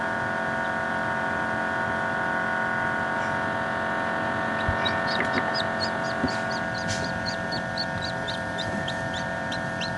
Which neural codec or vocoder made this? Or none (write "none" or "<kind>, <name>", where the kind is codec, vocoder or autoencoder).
none